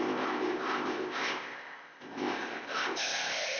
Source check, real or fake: fake